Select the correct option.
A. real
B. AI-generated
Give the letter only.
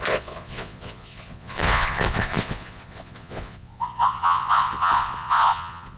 B